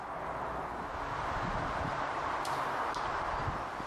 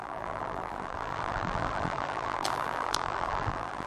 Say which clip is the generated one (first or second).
second